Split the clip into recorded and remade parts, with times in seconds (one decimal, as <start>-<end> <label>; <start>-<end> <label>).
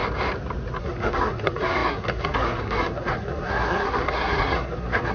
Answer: 0.0-0.8 recorded; 0.8-5.1 remade